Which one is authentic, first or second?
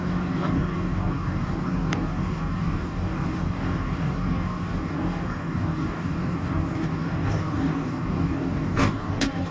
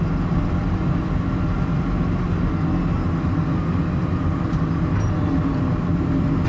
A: second